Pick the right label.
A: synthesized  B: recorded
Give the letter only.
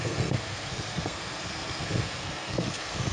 A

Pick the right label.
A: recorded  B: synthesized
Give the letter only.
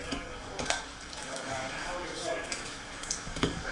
B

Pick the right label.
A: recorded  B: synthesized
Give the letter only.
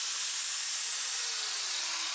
A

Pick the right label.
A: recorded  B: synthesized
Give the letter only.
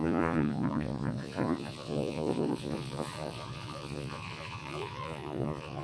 B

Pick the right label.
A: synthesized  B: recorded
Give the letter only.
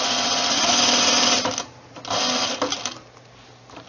B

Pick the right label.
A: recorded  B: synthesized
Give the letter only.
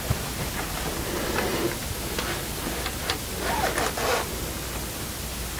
A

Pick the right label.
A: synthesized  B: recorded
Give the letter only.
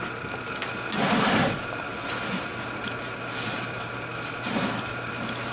B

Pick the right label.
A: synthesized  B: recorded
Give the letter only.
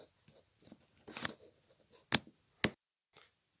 B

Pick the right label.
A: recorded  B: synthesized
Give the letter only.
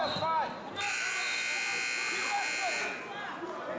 A